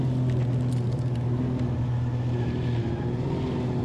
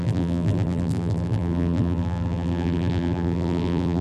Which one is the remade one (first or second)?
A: second